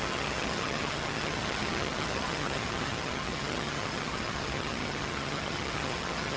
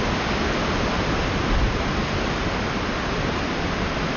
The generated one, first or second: first